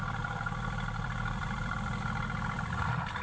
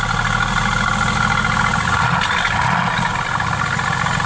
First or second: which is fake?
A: first